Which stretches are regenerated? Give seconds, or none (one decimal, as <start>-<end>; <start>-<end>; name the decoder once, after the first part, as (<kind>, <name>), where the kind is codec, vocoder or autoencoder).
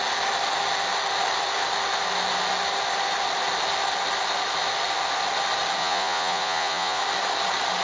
5.8-7.0 (vocoder, Vocos)